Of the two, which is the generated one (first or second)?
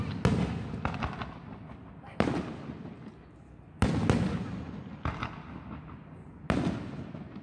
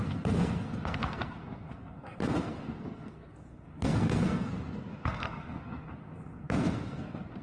second